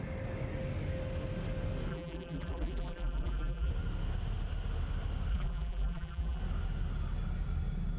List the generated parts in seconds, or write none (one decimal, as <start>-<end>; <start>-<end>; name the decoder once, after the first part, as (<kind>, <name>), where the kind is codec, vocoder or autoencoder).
1.9-3.7 (vocoder, BigVGAN v2); 5.3-6.4